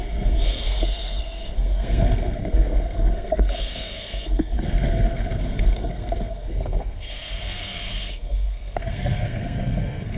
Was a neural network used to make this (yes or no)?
yes